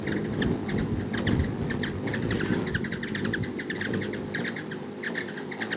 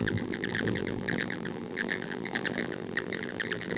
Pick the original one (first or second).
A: first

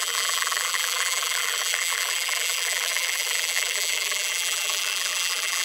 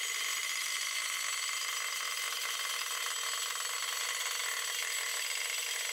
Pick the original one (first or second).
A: second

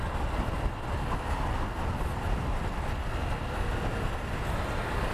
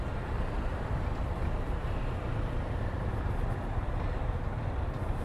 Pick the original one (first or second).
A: first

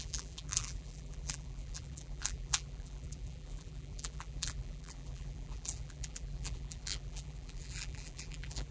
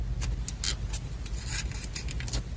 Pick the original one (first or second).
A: second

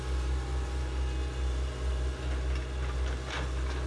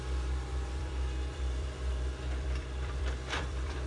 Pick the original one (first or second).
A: first